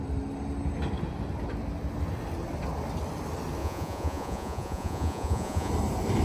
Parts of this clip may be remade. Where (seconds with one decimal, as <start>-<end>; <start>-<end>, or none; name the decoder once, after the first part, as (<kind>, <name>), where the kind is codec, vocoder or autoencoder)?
3.6-5.7 (vocoder, Vocos)